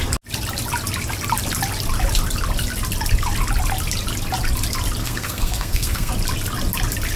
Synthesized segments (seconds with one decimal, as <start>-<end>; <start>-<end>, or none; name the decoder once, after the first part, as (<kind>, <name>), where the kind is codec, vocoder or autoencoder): 5.0-6.1 (codec, SNAC)